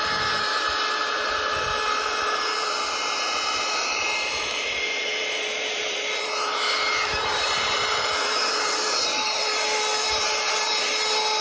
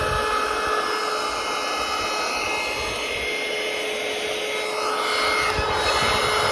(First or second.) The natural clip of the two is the second